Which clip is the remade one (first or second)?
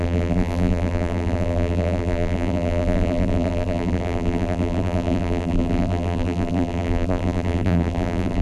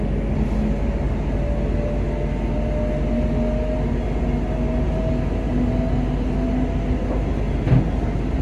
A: first